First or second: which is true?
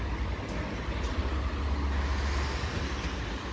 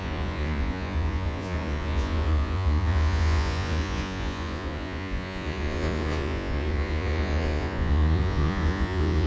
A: first